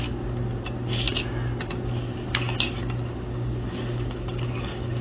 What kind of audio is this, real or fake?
real